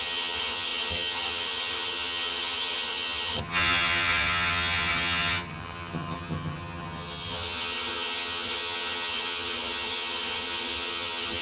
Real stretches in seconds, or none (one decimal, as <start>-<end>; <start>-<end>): none